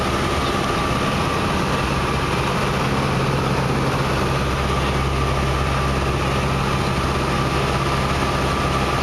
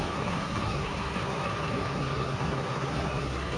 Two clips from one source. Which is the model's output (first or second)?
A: second